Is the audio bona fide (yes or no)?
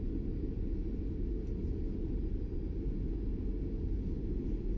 yes